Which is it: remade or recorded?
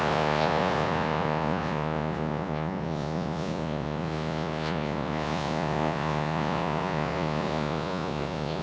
remade